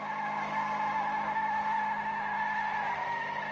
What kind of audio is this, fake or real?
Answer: real